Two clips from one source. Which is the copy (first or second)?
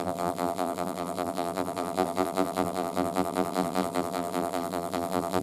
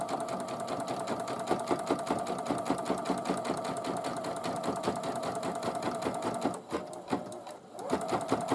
first